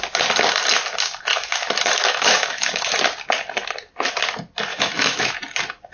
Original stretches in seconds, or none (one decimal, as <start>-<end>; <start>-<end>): 0.0-1.3; 3.0-4.7; 5.4-5.9